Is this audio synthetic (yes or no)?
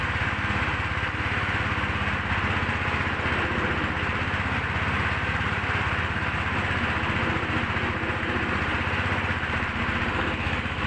no